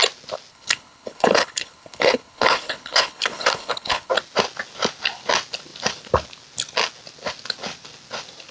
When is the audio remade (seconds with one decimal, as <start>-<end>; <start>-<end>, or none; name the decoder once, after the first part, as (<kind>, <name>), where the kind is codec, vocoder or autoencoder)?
0.5-4.1 (codec, HILCodec)